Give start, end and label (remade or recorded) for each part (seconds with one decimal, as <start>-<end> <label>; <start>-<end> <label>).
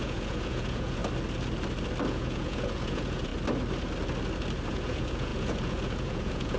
0.0-1.0 remade; 1.0-2.1 recorded; 2.1-3.3 remade; 3.3-4.7 recorded; 4.7-6.6 remade